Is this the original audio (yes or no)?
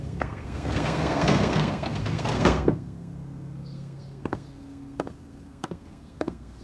no